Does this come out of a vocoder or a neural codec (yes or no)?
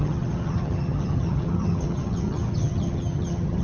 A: yes